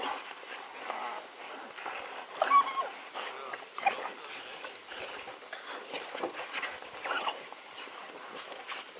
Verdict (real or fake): real